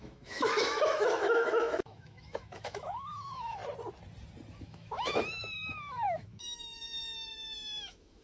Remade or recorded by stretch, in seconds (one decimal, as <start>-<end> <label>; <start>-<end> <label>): 0.0-3.6 remade; 3.6-4.6 recorded; 4.6-8.2 remade